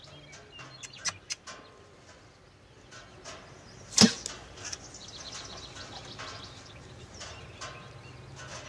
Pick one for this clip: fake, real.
real